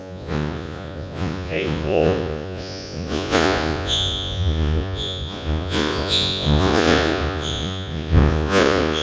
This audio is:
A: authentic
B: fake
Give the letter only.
B